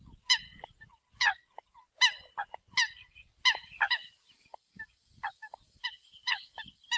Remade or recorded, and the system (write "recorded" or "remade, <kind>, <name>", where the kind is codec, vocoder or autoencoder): recorded